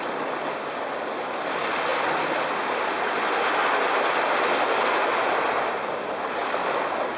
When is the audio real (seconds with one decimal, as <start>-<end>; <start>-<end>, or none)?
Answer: 0.0-7.2